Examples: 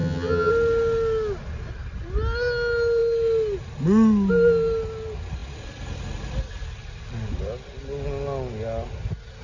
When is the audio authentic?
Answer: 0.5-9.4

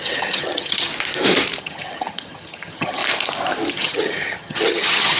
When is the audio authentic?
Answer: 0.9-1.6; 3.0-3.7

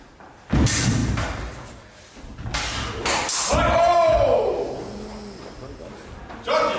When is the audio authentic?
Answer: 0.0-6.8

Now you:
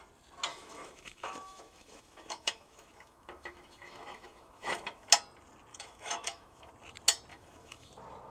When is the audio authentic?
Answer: 0.0-0.5; 5.1-5.7; 6.7-7.3; 7.9-8.3

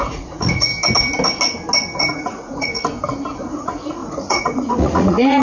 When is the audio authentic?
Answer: 0.7-2.0; 2.7-3.5

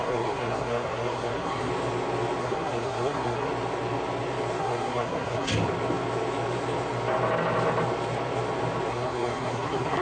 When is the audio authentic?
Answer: 1.7-2.4; 3.5-4.6; 5.5-8.9